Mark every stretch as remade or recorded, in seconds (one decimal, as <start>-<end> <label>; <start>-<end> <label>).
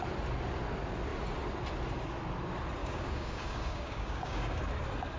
0.0-2.8 recorded; 2.8-4.6 remade; 4.6-5.2 recorded